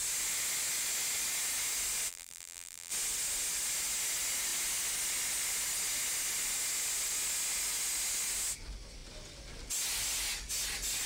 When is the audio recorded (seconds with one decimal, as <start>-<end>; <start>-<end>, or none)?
0.0-2.1; 2.9-11.1